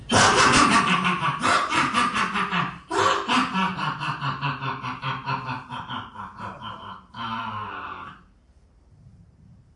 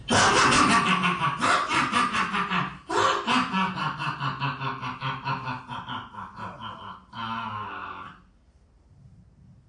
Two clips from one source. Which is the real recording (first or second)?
second